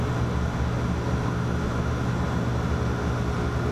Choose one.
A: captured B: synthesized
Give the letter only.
A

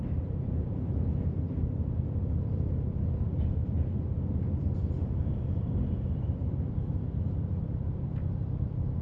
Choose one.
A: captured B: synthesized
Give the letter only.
B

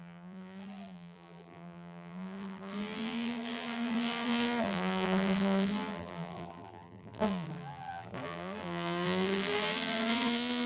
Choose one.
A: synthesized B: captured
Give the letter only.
A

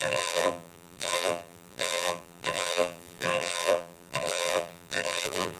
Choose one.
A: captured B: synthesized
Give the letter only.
B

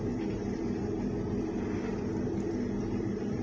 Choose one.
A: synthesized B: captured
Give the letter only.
A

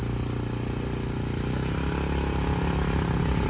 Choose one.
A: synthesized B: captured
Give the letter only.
B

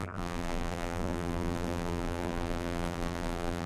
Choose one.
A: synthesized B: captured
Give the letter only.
A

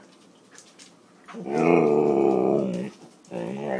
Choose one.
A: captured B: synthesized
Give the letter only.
A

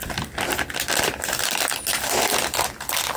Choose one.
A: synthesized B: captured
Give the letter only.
B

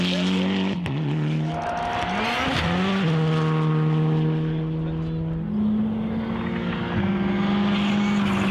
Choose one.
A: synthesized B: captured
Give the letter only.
B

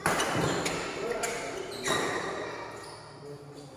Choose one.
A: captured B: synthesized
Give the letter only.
A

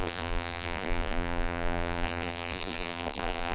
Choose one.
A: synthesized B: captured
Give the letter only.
A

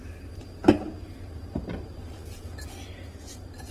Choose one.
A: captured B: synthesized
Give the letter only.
B